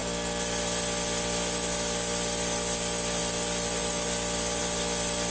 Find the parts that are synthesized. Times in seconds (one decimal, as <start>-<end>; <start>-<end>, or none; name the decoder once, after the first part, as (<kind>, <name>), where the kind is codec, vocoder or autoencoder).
none